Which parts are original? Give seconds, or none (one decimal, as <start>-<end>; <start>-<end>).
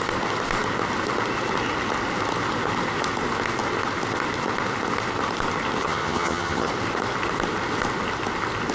0.0-5.8; 6.7-8.7